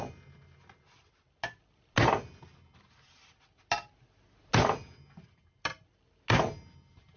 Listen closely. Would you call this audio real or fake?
real